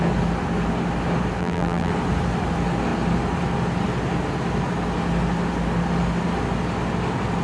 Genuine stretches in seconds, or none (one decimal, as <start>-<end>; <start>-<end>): 0.0-1.4; 1.9-7.4